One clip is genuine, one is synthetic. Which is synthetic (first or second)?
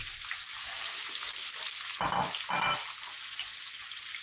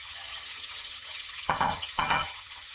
second